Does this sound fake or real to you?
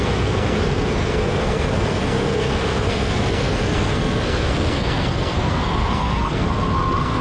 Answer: fake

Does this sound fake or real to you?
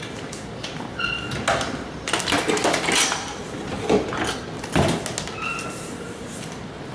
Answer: real